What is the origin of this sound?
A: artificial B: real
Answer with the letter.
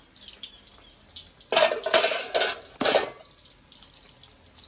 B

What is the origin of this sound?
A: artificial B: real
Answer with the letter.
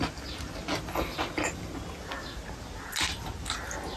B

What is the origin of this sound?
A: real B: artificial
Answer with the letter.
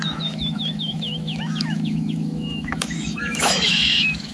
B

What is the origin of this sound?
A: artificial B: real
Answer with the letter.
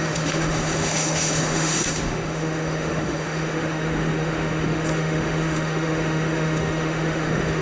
A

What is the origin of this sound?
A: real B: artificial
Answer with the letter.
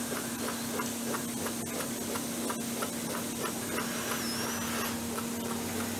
A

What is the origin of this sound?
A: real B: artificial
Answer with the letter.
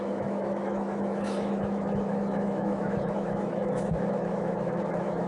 B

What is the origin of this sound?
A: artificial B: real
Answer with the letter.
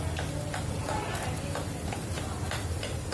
B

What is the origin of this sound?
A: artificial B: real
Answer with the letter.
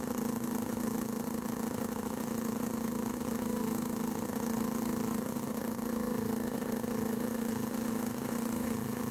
A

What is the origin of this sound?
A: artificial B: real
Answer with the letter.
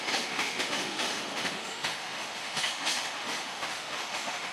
A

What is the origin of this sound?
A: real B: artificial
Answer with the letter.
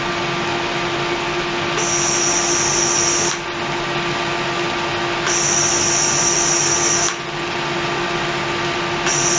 A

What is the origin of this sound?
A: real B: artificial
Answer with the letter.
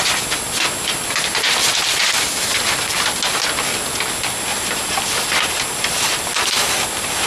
A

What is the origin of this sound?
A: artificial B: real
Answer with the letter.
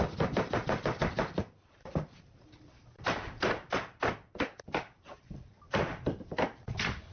B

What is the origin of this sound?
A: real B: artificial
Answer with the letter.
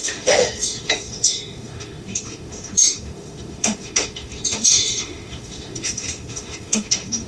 B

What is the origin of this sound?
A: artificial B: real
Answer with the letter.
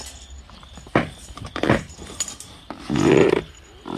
B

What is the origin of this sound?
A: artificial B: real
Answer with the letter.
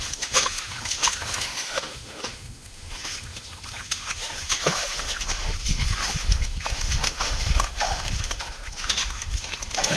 A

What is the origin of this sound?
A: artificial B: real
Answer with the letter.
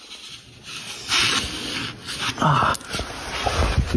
B